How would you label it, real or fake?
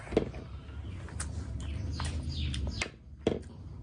real